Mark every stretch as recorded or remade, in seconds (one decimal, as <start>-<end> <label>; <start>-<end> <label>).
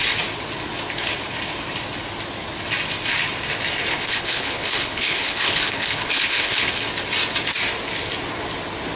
0.0-3.9 recorded; 3.9-6.7 remade; 6.7-9.0 recorded